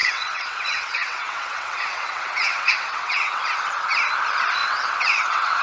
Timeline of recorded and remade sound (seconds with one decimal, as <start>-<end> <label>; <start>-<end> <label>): 0.0-3.4 remade; 3.4-4.6 recorded; 4.6-5.6 remade